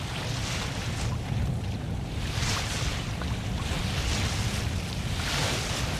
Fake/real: real